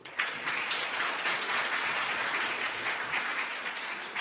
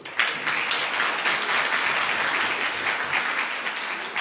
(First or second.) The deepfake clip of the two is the first